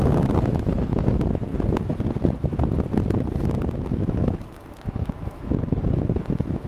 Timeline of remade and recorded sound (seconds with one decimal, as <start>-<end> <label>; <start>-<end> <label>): 0.0-1.5 remade; 1.5-3.8 recorded; 3.8-6.7 remade